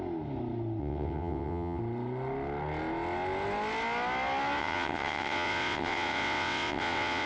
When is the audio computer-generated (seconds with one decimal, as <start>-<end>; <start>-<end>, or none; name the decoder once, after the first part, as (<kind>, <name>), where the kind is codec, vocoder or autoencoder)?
0.8-1.8 (vocoder, WaveNeXt); 4.6-7.3